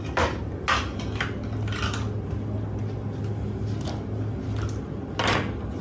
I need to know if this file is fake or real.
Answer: real